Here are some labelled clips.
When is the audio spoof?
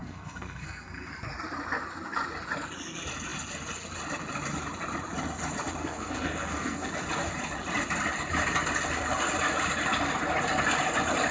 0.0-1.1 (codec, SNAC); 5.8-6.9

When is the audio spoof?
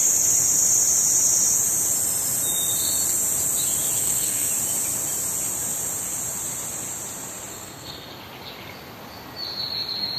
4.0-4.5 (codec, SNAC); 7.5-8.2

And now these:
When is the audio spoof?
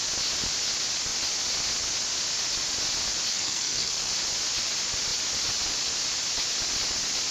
3.3-4.1 (codec, SNAC)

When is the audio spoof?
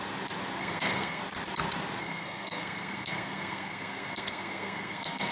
0.6-1.2 (codec, SNAC); 2.0-5.3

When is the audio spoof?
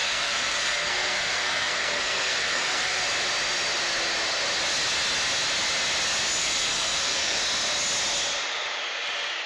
0.0-3.0 (codec, SNAC); 6.4-7.4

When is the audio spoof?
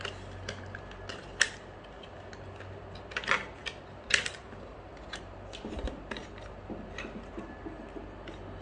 none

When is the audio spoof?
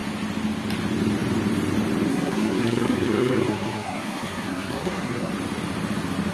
2.1-5.3 (codec, SNAC)